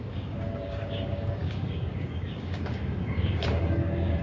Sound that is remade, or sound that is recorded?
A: remade